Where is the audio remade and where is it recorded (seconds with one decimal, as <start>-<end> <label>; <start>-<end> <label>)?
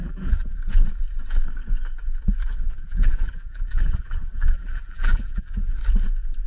0.0-0.6 remade; 0.6-2.6 recorded; 2.6-5.8 remade; 5.8-6.5 recorded